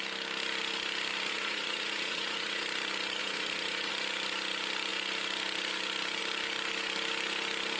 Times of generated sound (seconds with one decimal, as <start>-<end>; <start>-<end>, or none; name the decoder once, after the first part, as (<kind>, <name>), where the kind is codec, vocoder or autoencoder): 1.3-2.6 (vocoder, Vocos); 3.2-3.9